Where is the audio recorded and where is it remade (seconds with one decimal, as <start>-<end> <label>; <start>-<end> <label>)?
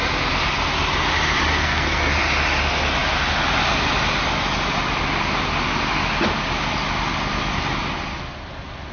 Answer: 0.0-1.5 recorded; 1.5-2.1 remade; 2.1-8.9 recorded